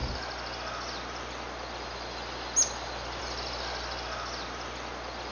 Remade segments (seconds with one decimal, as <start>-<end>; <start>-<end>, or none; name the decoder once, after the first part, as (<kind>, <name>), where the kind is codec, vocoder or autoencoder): none